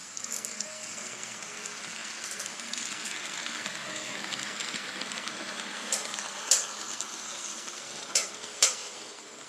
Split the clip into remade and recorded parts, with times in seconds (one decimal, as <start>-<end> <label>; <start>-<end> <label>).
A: 0.0-9.5 remade